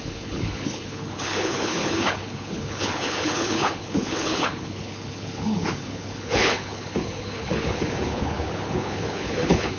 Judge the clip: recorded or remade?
remade